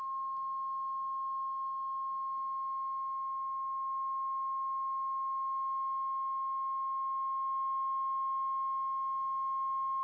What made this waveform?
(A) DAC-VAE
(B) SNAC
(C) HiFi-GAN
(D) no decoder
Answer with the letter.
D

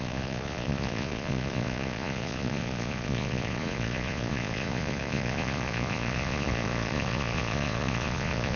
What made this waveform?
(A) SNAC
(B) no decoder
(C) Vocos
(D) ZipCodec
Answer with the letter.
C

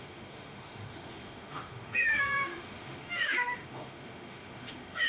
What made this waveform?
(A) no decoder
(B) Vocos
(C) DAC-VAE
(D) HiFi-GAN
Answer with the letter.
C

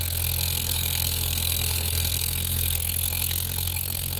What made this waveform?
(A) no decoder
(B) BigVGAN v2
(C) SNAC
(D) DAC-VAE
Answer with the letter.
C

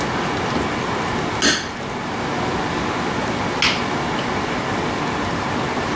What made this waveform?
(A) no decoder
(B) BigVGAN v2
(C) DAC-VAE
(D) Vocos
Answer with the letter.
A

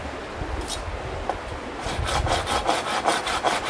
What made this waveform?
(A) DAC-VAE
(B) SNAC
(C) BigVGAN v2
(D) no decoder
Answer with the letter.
D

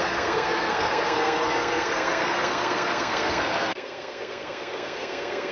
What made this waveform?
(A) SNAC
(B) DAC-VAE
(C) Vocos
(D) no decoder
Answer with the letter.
A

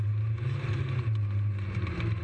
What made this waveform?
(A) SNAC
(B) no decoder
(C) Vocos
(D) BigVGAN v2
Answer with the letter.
B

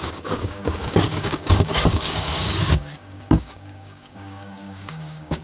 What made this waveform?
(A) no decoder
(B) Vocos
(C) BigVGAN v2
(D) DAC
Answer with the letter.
D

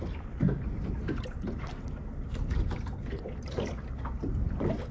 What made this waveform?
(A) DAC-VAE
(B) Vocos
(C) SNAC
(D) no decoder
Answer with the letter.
D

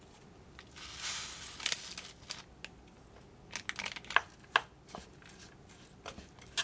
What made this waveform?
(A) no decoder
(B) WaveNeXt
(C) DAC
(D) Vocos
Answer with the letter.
A